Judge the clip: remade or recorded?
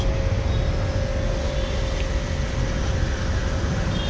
recorded